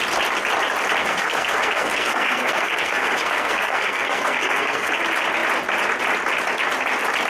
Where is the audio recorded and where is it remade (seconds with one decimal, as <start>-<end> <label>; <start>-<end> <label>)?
0.0-1.0 recorded; 1.0-4.9 remade; 4.9-7.3 recorded